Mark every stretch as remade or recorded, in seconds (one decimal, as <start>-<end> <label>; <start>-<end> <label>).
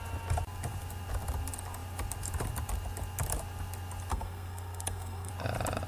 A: 0.0-4.1 recorded; 4.1-5.3 remade; 5.3-5.9 recorded